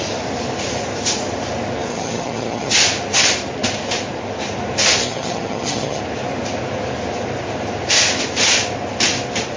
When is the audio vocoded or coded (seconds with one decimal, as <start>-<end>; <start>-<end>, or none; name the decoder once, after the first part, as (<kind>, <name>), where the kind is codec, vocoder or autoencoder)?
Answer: 1.9-2.7 (vocoder, HiFi-GAN); 5.0-6.0